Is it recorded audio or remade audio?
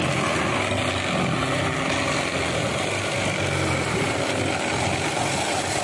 recorded